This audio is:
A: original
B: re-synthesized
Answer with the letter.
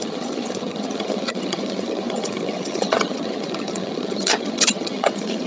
B